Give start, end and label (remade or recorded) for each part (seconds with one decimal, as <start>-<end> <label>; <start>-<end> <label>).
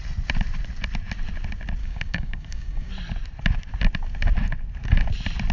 0.0-1.8 recorded; 1.8-2.9 remade; 2.9-5.5 recorded